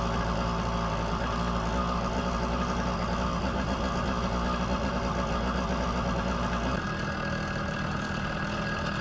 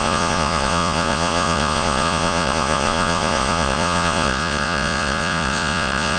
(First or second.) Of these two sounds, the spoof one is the second